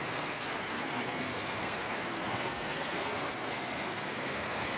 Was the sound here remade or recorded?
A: remade